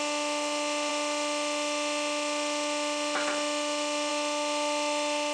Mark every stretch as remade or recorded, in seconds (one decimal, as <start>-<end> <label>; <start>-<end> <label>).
0.0-5.3 recorded